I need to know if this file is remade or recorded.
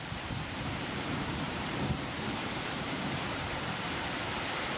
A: remade